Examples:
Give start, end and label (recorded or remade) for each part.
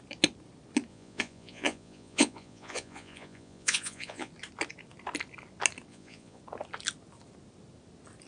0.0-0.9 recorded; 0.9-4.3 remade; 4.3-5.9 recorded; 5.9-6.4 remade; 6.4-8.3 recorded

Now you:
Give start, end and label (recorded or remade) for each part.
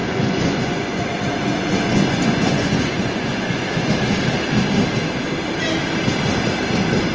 0.0-3.9 remade; 3.9-7.1 recorded